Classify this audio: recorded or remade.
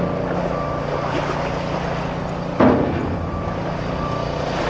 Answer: recorded